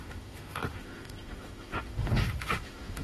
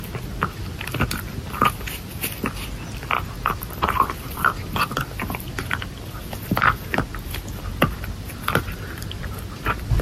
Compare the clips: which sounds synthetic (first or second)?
first